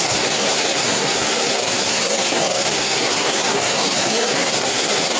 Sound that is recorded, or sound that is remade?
remade